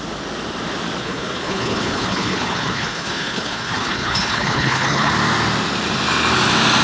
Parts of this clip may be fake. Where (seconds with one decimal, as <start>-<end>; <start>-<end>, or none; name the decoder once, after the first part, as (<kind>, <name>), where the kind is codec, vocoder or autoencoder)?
1.0-5.1 (codec, HILCodec)